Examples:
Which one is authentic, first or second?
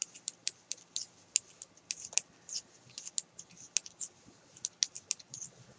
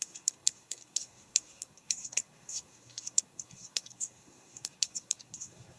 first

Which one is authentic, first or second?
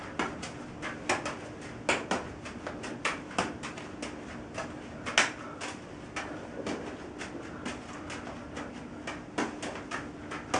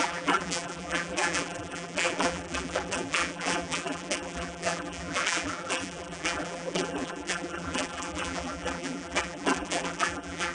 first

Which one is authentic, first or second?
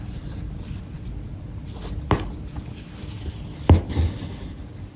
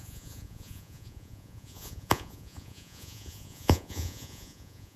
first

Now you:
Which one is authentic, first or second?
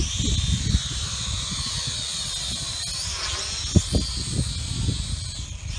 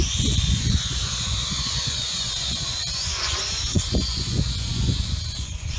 first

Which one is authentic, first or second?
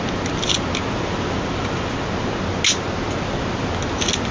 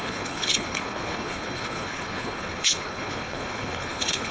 first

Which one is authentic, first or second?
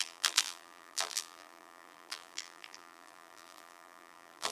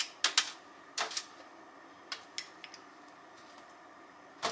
second